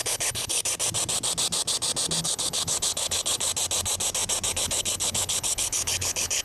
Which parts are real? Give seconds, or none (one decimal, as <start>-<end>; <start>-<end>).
0.6-2.2; 3.5-4.5